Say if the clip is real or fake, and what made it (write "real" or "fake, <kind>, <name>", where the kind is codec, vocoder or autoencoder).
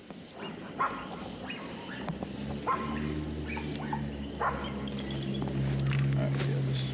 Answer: real